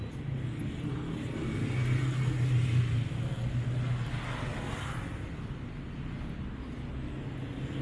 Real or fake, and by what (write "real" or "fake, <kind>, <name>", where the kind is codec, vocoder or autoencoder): real